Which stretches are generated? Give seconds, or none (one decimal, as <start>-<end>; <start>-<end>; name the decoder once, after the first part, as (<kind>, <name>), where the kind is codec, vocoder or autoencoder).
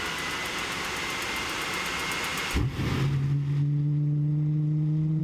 none